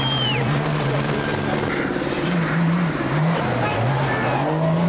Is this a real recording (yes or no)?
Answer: yes